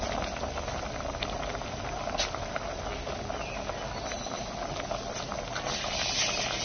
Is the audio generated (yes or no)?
no